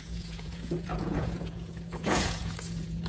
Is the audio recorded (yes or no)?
no